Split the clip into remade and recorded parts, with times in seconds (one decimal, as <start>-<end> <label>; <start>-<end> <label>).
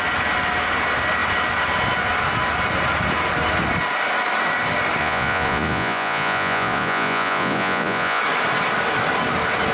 0.0-5.0 recorded; 5.0-8.2 remade; 8.2-9.7 recorded